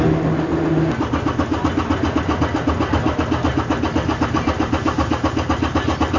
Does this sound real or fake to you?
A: real